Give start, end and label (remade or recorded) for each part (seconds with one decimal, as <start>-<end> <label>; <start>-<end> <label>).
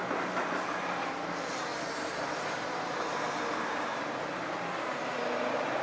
0.0-1.7 recorded; 1.7-5.2 remade; 5.2-5.8 recorded